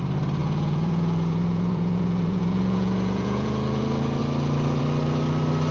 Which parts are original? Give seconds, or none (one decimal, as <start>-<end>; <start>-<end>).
0.0-0.4; 3.8-5.7